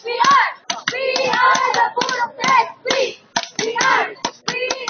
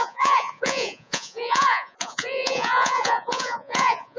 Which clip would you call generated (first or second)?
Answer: second